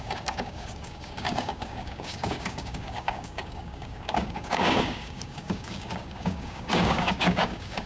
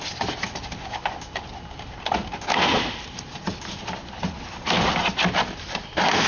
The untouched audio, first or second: second